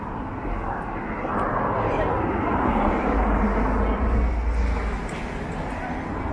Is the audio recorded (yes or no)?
yes